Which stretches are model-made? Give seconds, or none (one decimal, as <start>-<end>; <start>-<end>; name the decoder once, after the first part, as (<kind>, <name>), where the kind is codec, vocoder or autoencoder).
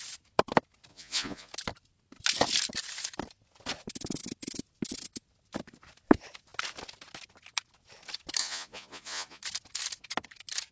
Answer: 0.9-1.5 (vocoder, Vocos); 8.4-9.4